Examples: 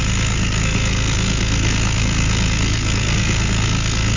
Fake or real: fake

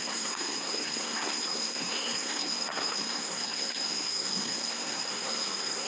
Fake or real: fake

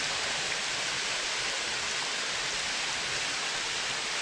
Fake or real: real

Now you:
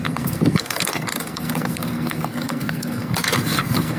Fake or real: fake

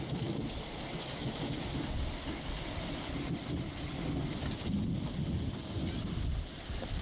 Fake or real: real